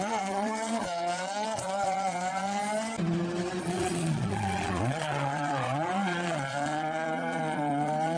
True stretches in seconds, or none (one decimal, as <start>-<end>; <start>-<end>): 2.6-3.6